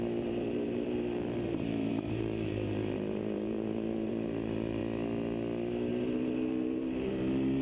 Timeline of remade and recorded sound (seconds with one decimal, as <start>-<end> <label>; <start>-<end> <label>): 0.0-4.8 remade; 4.8-5.9 recorded; 5.9-7.6 remade